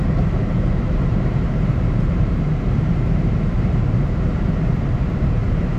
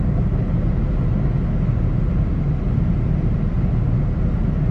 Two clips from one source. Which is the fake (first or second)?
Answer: first